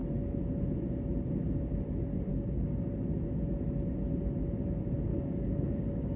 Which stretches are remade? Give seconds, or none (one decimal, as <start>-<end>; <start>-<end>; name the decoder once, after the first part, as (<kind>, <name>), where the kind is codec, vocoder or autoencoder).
2.3-2.9 (codec, DAC); 5.1-6.2